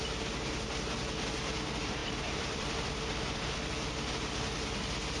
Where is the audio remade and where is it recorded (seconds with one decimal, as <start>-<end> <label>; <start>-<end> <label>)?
0.0-2.0 recorded; 2.0-2.9 remade; 2.9-5.2 recorded